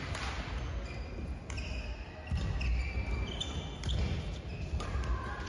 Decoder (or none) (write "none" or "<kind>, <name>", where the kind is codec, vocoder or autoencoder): none